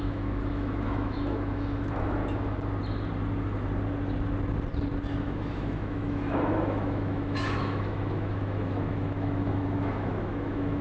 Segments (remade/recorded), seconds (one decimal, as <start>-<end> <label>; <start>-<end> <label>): 0.0-2.2 remade; 2.2-5.2 recorded; 5.2-10.8 remade